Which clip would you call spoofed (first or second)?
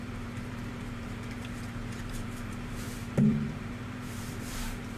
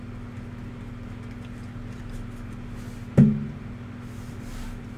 first